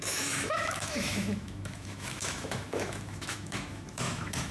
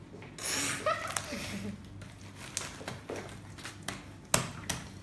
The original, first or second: second